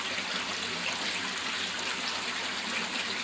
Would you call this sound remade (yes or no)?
no